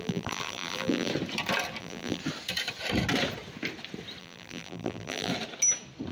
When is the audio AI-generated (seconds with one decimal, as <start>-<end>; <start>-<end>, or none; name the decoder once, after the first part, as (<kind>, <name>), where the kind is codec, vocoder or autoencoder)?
0.0-1.1 (vocoder, BigVGAN v2); 1.8-2.2; 4.2-5.3